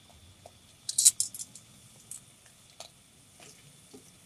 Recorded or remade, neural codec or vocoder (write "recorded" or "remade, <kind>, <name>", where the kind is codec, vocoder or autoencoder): recorded